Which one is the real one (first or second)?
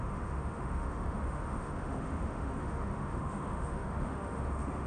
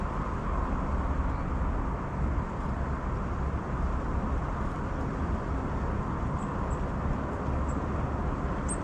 second